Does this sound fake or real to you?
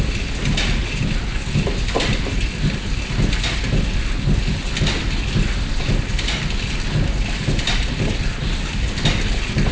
real